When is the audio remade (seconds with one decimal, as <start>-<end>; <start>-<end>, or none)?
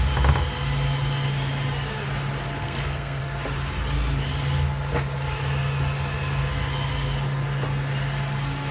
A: 2.6-3.2